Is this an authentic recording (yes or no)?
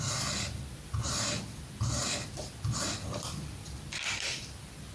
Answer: no